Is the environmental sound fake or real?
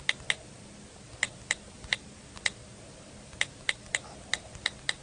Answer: real